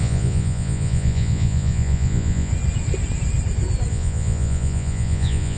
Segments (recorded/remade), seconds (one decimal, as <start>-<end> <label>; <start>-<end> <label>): 0.0-2.5 remade; 2.5-3.9 recorded; 3.9-5.6 remade